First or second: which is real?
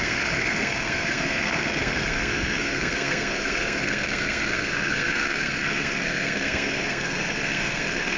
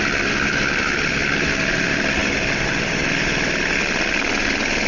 second